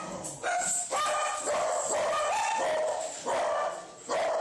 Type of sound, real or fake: real